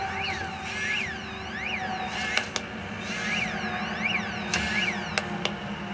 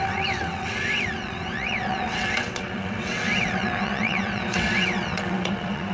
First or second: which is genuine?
first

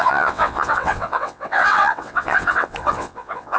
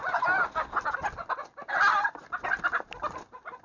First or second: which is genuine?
second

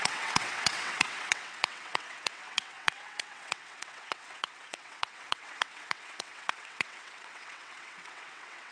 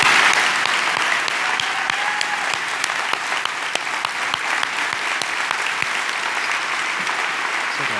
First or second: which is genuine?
second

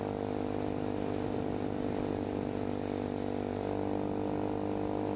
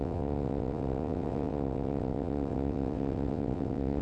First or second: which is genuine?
first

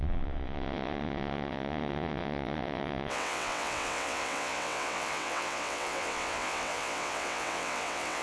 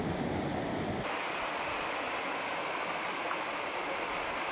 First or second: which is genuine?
second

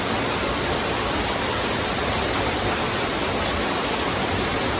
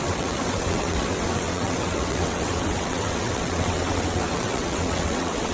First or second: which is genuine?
first